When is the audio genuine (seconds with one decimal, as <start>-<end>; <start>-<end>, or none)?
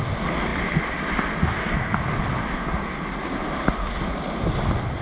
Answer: 0.0-5.0